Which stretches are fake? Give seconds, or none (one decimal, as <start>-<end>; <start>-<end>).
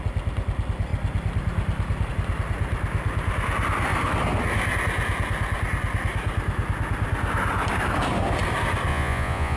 8.9-9.6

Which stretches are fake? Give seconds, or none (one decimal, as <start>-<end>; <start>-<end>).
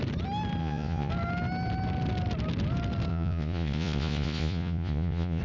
0.6-1.1; 3.1-5.4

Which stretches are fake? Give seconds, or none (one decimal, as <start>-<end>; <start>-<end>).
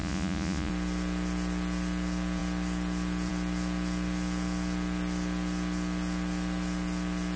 0.0-0.7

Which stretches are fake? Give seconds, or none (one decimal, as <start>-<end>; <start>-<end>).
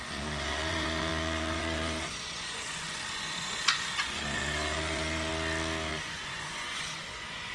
0.0-5.3; 5.9-7.5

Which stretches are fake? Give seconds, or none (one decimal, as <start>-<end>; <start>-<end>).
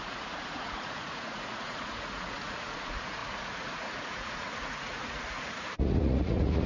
0.0-6.7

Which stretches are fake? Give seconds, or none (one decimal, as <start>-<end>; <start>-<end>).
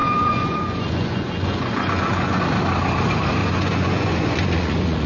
0.0-2.4; 3.4-5.1